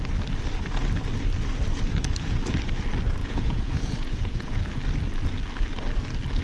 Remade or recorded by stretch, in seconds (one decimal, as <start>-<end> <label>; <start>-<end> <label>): 0.0-3.2 recorded; 3.2-4.6 remade; 4.6-6.4 recorded